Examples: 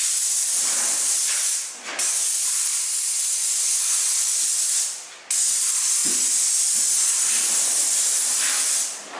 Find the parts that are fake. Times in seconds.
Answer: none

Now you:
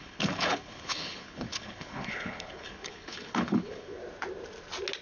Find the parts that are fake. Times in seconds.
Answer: 0.0-4.0 (codec, HILCodec)

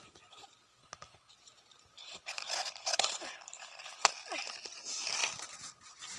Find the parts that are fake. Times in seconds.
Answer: 0.8-1.3 (codec, HILCodec); 2.0-4.1

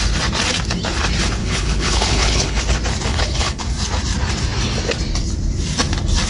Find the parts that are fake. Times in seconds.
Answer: 1.4-2.6 (codec, HILCodec); 3.1-3.6

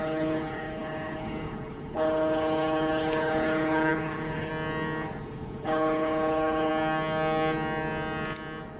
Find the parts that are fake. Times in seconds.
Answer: 0.0-4.5 (codec, HILCodec); 5.2-6.7

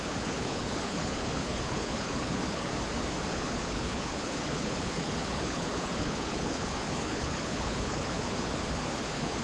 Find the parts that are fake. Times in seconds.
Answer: 0.0-2.7 (codec, HILCodec); 3.3-9.4

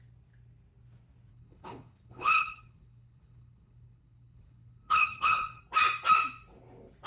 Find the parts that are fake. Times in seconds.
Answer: 1.3-5.6 (codec, HILCodec)

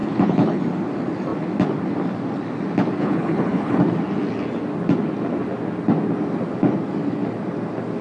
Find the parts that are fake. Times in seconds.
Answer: 0.0-0.6 (codec, HILCodec); 3.0-3.8